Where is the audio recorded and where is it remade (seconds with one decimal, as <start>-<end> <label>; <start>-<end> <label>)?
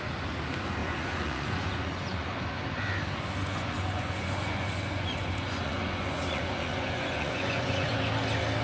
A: 0.0-0.8 recorded; 0.8-2.4 remade; 2.4-3.4 recorded; 3.4-7.9 remade; 7.9-8.6 recorded